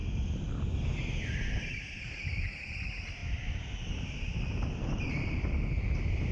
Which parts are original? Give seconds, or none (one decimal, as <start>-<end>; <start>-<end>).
0.0-3.2; 3.9-6.3